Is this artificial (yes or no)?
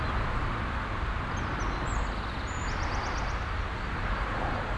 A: no